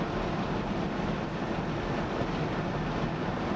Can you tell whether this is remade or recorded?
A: recorded